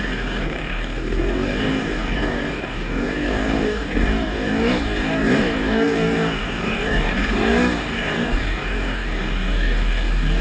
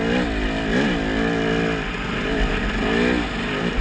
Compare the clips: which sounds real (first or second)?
second